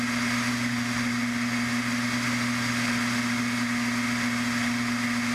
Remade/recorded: recorded